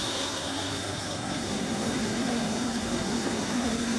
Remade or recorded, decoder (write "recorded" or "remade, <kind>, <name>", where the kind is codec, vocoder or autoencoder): remade, codec, SNAC